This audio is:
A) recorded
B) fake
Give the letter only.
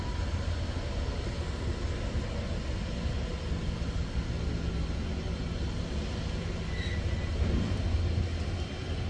A